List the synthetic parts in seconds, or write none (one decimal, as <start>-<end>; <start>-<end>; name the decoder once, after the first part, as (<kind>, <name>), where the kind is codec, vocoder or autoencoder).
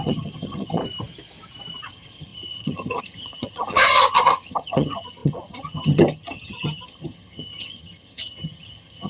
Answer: 0.0-0.8 (vocoder, HiFi-GAN); 1.8-9.1